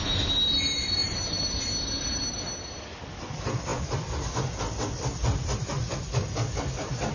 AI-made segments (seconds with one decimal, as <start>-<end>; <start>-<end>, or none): 1.0-1.6